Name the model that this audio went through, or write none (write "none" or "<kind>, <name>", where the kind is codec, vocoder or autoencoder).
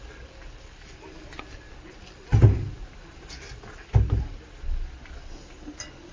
none